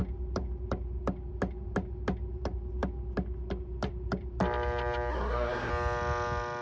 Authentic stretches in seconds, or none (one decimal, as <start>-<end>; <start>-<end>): 0.0-5.1; 5.7-6.6